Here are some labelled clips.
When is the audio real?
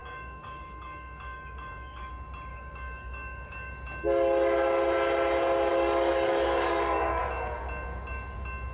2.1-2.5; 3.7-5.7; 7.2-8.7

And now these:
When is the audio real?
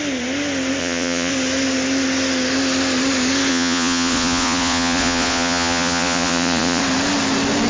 0.0-0.8; 1.3-3.5; 6.8-7.7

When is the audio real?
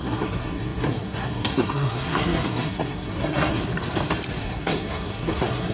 3.6-4.4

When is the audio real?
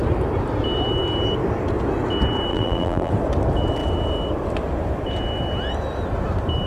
0.0-2.5; 3.1-6.7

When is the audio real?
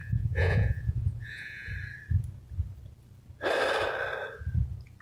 1.7-5.0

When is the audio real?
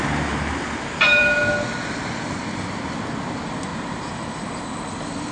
0.0-3.7; 4.2-5.3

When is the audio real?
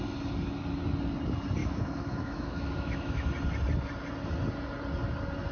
0.0-1.6; 3.3-5.5